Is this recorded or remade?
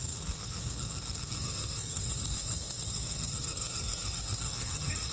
remade